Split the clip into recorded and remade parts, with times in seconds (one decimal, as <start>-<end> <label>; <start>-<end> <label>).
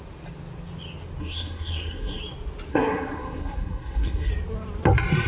0.0-1.2 recorded; 1.2-2.2 remade; 2.2-2.7 recorded; 2.7-4.3 remade; 4.3-5.3 recorded